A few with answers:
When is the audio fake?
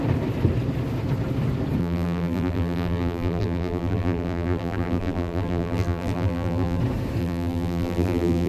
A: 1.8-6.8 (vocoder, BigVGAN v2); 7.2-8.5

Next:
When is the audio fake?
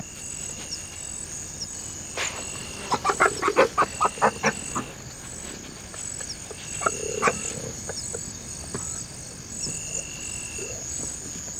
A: none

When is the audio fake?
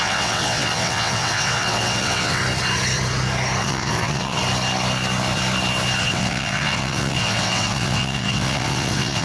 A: 0.0-2.4 (vocoder, WaveNeXt); 3.6-4.4; 6.0-9.2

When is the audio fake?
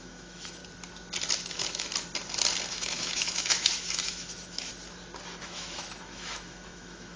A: 0.0-0.6 (autoencoder, DAC-VAE); 1.5-1.9; 2.7-4.7; 5.4-7.2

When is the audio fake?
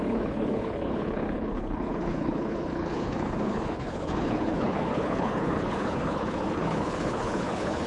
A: 0.0-7.9 (codec, HILCodec)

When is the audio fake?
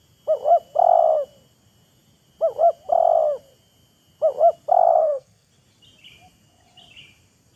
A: 5.0-5.5 (codec, SNAC)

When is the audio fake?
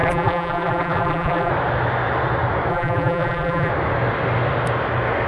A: 0.0-1.5 (vocoder, BigVGAN v2); 2.7-3.7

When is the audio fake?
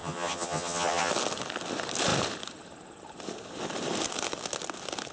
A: 0.0-1.1 (vocoder, HiFi-GAN)